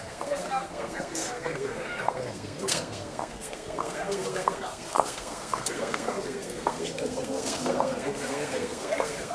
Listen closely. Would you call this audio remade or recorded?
remade